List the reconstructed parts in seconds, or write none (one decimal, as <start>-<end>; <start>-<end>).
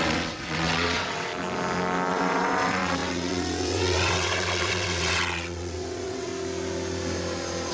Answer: 0.0-1.3; 2.1-6.3